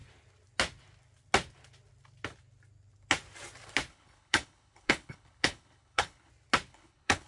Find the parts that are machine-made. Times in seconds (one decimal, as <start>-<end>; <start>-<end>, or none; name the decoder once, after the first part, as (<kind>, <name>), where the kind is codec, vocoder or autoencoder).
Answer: 3.9-6.3 (codec, HILCodec); 6.7-7.3